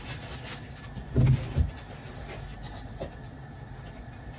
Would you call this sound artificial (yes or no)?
no